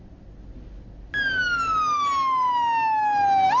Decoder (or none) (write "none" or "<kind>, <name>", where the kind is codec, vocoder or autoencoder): none